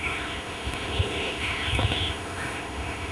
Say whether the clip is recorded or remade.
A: remade